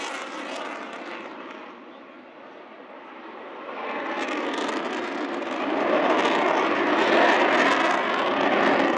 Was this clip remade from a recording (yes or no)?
no